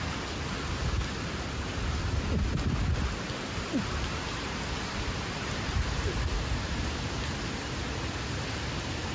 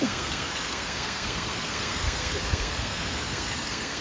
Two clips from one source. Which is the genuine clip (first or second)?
first